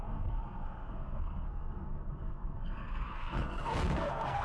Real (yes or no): no